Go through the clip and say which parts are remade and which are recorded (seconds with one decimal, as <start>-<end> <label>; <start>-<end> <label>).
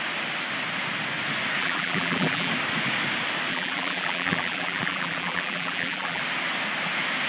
0.0-1.6 recorded; 1.6-2.5 remade; 2.5-3.5 recorded; 3.5-6.2 remade; 6.2-7.3 recorded